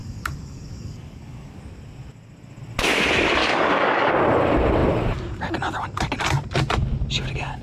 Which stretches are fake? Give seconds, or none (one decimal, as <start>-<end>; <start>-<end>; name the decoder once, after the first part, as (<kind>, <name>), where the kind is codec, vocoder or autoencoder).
0.0-1.6 (codec, DAC); 3.4-4.1